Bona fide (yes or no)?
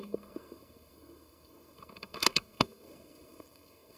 no